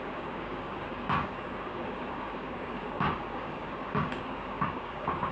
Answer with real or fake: fake